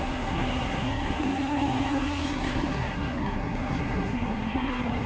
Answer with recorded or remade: remade